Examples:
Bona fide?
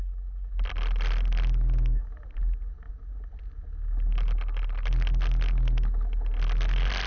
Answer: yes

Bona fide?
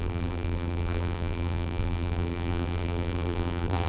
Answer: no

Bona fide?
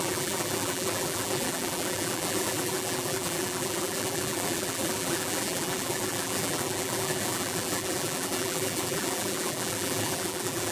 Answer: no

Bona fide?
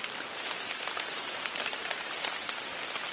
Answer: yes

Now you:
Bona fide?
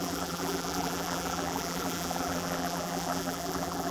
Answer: no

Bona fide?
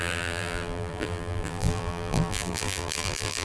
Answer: no